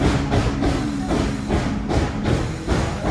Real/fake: real